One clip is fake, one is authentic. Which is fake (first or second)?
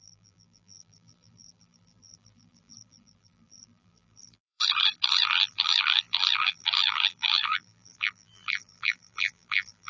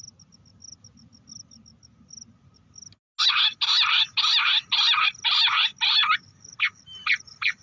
first